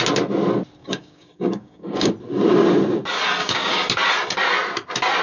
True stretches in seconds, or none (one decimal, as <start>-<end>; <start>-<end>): 0.0-0.8; 2.1-3.4; 3.9-5.2

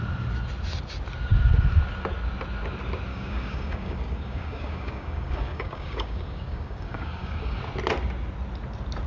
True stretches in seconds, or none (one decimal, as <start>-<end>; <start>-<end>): 0.0-3.1; 7.6-9.1

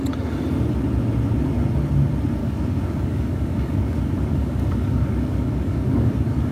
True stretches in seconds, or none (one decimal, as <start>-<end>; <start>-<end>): 0.0-2.4

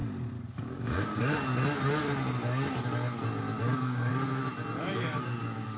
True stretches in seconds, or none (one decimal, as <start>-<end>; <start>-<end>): 0.0-0.6; 1.1-3.6; 4.1-4.8